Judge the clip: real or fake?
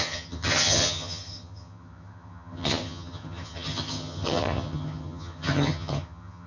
fake